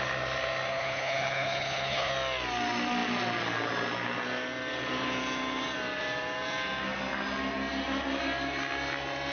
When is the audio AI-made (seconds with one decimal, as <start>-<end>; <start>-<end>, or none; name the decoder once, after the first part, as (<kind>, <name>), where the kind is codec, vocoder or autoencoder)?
0.7-2.1 (codec, HILCodec)